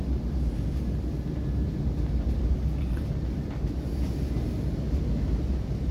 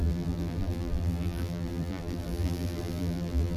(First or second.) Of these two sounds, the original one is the first